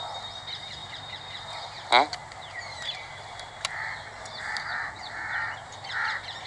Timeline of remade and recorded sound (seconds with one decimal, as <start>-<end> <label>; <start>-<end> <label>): 0.0-0.8 recorded; 0.8-1.6 remade; 1.6-2.2 recorded; 2.2-6.1 remade; 6.1-6.5 recorded